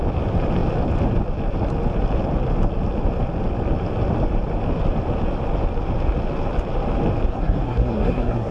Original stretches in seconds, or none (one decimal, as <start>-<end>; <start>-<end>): 0.0-7.3

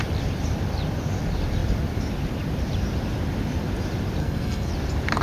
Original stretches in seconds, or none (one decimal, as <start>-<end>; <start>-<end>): 0.0-4.2; 4.7-5.2

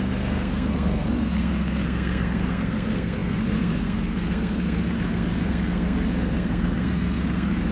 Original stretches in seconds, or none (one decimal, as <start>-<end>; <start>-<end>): none

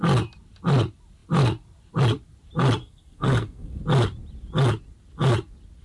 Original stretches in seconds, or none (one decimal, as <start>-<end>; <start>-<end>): 0.0-2.8; 3.8-5.8

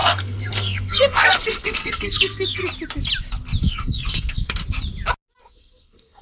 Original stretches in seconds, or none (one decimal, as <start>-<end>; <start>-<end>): 2.6-3.6; 4.6-5.4

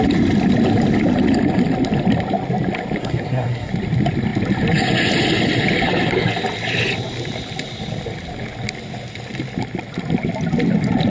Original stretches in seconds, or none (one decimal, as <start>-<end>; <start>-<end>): 0.0-3.0; 3.7-11.1

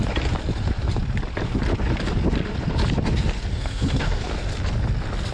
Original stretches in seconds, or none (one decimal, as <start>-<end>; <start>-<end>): 0.0-3.5; 4.2-5.3